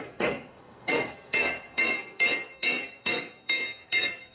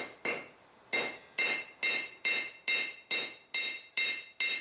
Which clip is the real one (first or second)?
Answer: second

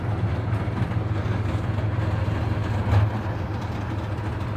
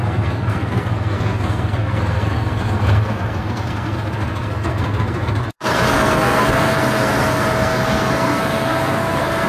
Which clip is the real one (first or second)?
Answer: first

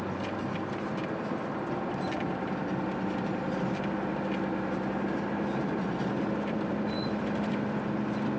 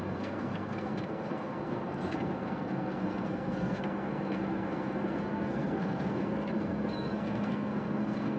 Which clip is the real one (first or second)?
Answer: first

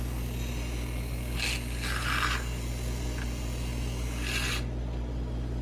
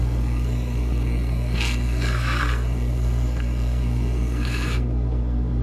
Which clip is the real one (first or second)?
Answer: first